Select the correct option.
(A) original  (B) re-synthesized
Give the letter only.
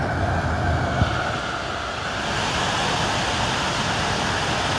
A